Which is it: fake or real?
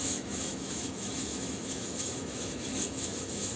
fake